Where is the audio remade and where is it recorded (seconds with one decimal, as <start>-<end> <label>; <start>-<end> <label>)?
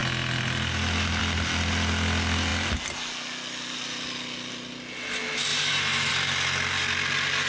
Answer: 0.0-5.5 recorded; 5.5-6.1 remade; 6.1-7.5 recorded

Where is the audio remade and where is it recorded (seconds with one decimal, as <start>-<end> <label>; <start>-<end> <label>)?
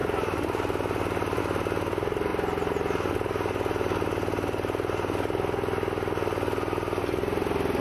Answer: 0.0-2.3 remade; 2.3-7.0 recorded; 7.0-7.8 remade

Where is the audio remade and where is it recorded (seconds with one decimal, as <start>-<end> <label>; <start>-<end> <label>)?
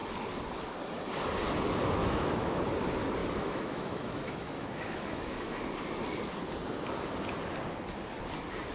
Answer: 0.0-2.0 recorded; 2.0-2.6 remade; 2.6-3.2 recorded; 3.2-5.7 remade; 5.7-8.7 recorded